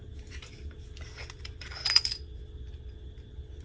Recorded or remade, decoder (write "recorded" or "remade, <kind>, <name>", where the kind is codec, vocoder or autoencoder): recorded